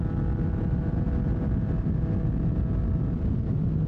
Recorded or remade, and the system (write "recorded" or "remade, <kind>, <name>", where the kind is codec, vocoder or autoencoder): recorded